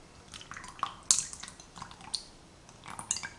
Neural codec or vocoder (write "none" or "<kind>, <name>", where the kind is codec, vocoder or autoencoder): none